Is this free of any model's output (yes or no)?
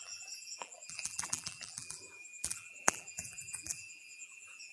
no